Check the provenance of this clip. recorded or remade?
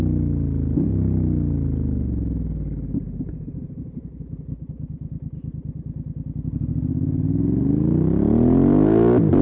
recorded